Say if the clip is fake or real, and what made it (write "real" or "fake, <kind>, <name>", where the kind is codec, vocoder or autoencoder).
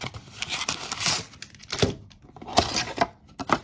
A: real